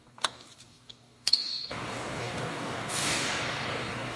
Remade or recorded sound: remade